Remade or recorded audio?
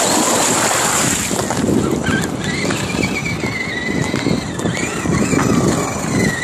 recorded